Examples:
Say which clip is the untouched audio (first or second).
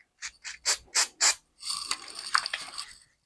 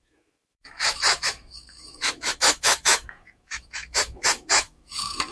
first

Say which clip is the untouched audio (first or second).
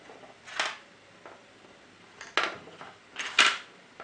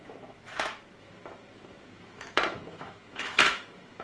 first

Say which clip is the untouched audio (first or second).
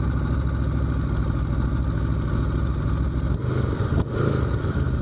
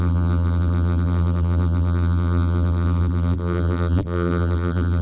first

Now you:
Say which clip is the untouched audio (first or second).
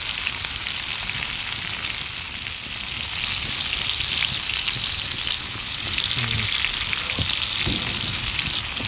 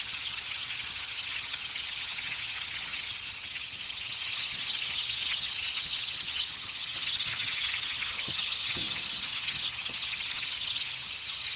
first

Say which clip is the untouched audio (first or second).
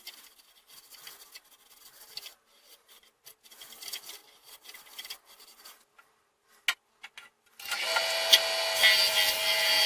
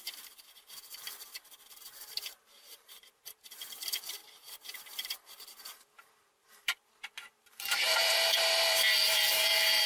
first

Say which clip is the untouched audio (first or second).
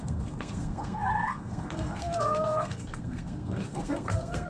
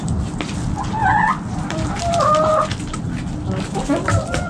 second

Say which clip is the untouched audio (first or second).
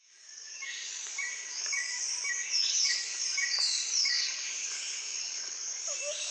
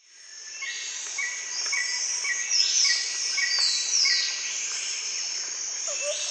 second